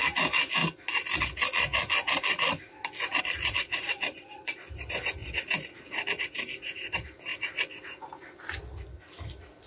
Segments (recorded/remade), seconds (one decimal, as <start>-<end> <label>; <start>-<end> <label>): 0.0-0.6 remade; 0.6-3.2 recorded; 3.2-7.3 remade; 7.3-9.7 recorded